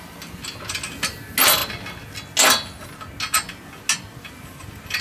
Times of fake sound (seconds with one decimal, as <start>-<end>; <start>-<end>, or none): none